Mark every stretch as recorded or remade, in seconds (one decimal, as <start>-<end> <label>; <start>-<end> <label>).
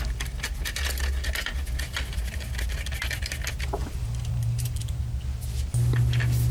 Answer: 0.0-3.8 recorded; 3.8-5.0 remade; 5.0-6.5 recorded